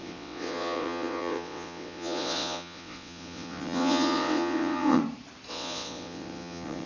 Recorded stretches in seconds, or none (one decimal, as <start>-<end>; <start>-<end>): 5.0-5.5